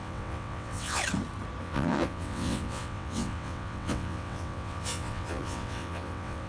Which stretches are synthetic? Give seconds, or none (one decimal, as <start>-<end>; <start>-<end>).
0.0-1.0; 1.6-6.5